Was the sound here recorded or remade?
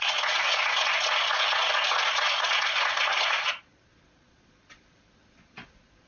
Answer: remade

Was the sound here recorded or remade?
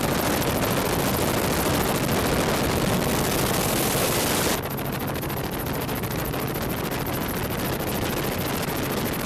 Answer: recorded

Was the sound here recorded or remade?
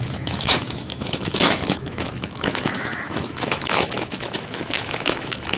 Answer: remade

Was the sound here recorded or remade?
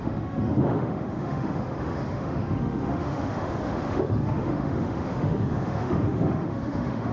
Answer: remade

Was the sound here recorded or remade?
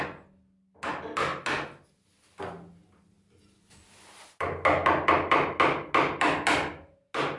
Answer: recorded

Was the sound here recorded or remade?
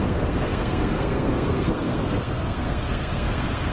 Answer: remade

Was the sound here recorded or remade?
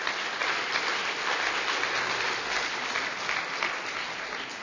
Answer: recorded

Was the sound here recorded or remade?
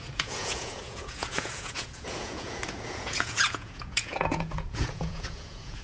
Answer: remade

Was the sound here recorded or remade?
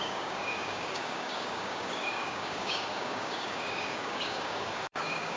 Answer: remade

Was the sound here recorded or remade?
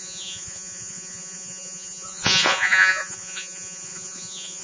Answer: remade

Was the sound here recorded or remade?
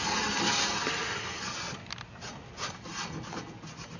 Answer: recorded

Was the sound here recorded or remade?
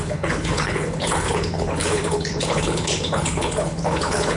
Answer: remade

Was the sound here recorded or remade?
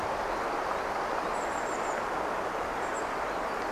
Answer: recorded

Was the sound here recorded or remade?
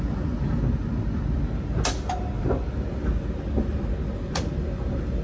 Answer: recorded